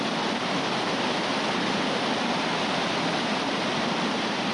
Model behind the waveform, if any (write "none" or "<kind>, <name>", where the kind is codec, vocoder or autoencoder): none